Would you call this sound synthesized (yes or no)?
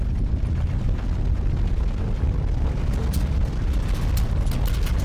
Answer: no